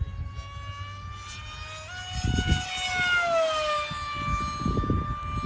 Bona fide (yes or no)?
yes